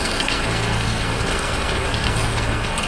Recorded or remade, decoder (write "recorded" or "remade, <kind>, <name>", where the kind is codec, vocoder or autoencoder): remade, codec, SNAC